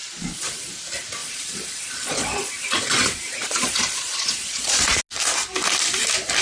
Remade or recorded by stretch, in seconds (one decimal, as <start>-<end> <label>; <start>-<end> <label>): 0.0-0.7 remade; 0.7-1.2 recorded; 1.2-5.0 remade; 5.0-6.4 recorded